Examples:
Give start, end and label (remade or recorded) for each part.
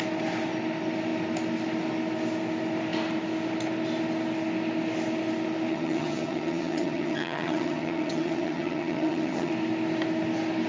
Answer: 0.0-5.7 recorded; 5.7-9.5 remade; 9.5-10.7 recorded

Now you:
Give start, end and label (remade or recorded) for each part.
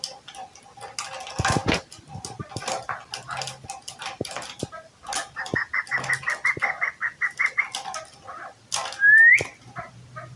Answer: 0.0-10.4 recorded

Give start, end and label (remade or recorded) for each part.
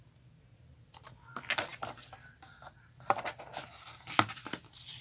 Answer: 0.0-5.0 recorded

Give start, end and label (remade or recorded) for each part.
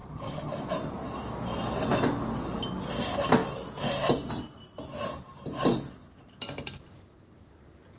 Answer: 0.0-0.5 remade; 0.5-8.0 recorded